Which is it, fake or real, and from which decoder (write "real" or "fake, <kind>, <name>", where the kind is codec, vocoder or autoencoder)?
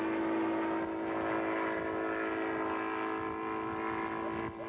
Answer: real